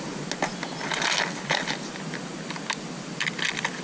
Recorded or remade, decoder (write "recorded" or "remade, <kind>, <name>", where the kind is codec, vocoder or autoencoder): recorded